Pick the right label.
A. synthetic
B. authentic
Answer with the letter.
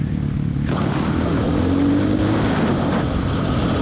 B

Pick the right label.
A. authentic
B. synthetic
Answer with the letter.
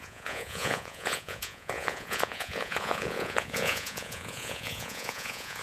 B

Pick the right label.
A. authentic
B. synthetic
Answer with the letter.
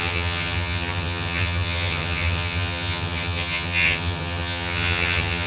B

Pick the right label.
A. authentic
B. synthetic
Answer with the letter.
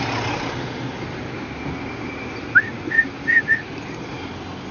A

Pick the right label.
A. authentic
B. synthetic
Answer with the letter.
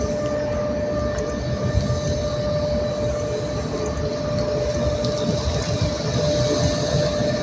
A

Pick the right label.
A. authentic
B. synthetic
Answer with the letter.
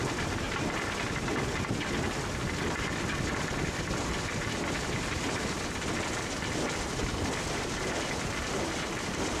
B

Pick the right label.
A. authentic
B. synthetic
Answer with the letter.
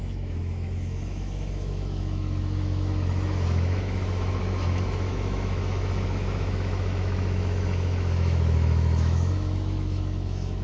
B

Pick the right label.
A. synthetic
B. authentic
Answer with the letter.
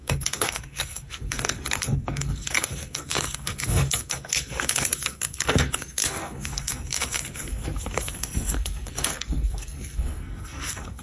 A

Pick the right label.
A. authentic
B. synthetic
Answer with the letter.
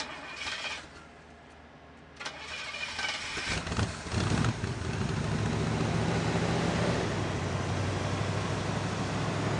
A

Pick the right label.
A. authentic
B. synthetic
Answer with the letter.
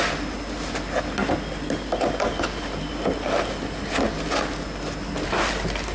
A